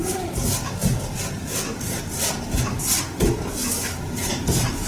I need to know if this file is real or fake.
real